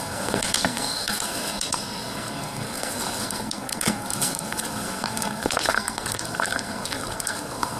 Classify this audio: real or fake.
fake